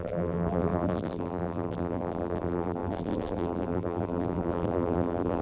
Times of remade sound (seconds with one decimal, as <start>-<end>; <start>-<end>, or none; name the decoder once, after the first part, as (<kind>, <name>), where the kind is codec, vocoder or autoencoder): 0.0-5.4 (vocoder, BigVGAN v2)

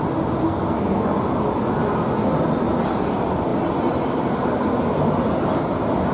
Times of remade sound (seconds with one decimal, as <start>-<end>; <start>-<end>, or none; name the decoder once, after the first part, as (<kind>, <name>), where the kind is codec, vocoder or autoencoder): 0.4-1.2 (codec, SNAC)

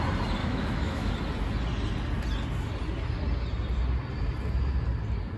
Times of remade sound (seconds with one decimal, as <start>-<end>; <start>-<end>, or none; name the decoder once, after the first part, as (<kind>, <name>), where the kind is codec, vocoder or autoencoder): 0.4-1.1 (autoencoder, DAC-VAE)

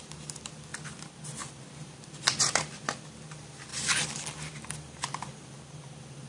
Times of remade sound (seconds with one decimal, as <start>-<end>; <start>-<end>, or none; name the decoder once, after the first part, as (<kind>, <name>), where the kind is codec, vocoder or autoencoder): 0.0-0.7 (vocoder, BigVGAN v2); 1.5-6.3

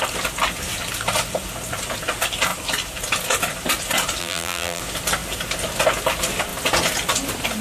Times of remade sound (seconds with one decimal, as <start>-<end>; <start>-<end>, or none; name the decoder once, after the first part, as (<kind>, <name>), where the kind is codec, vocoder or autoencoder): 4.2-4.8 (vocoder, BigVGAN v2)

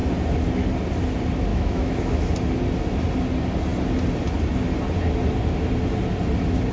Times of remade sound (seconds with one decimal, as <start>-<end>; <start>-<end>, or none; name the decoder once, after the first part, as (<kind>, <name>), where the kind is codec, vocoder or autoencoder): 1.5-2.3 (autoencoder, DAC-VAE)

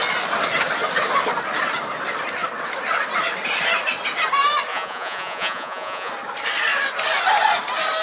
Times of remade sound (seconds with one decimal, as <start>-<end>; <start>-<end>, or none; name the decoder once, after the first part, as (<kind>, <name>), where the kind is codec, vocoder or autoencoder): 4.7-6.1 (vocoder, Vocos)